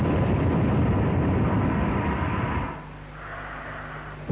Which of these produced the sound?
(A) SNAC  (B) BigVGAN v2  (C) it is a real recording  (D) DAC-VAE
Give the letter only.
C